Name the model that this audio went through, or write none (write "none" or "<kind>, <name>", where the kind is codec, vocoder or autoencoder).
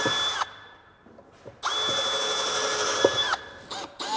none